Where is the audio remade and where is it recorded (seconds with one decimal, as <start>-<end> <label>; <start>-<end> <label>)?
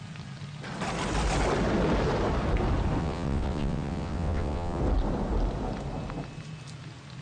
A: 0.0-3.0 recorded; 3.0-4.8 remade; 4.8-7.2 recorded